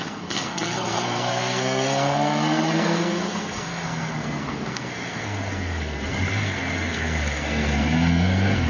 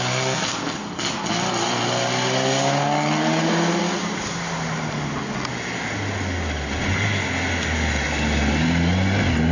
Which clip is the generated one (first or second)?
first